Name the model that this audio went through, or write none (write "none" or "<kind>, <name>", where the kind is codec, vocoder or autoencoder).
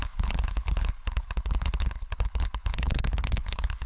codec, HILCodec